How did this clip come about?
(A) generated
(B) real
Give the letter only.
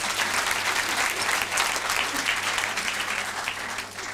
B